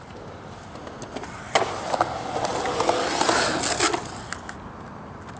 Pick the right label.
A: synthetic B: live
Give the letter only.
B